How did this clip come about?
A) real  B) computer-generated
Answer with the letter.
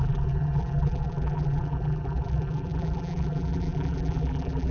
B